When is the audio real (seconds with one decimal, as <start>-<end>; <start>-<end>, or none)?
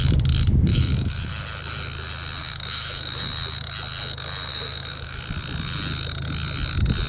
0.0-0.7; 1.3-2.4; 3.2-4.5; 5.2-7.1